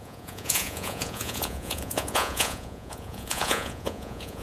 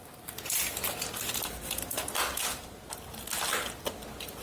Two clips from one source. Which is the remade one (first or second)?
first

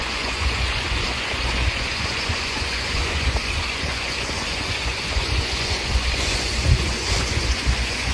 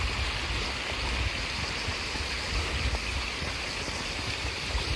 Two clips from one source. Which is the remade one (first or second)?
first